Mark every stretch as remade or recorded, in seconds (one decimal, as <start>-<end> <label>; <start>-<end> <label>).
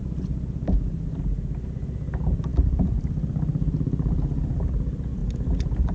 0.0-2.5 recorded; 2.5-4.7 remade; 4.7-5.9 recorded